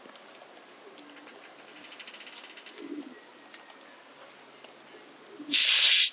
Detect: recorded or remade recorded